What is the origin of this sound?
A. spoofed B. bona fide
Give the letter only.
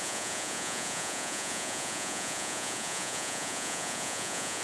A